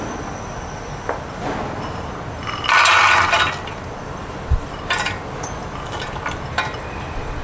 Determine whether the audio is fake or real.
real